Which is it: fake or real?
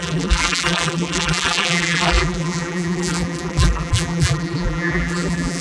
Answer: fake